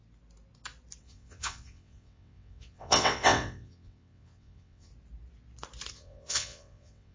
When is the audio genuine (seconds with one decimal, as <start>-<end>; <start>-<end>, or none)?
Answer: 0.0-1.0; 4.9-5.9